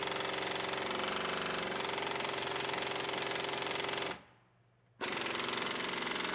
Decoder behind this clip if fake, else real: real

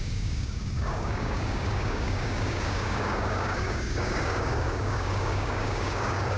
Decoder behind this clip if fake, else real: fake, codec, DAC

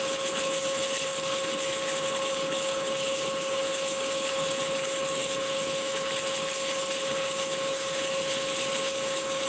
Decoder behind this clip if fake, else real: fake, codec, HILCodec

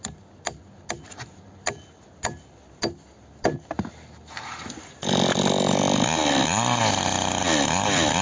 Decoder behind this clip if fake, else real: real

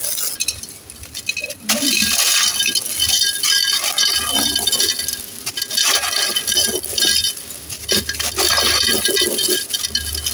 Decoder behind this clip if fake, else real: real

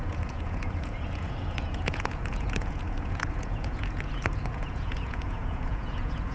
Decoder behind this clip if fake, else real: fake, vocoder, Vocos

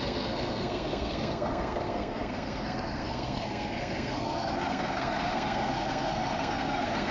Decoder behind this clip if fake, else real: fake, codec, SNAC